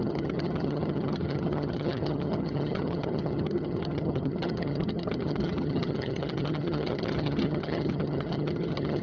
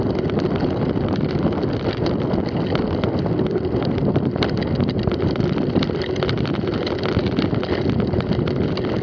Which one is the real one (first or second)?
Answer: second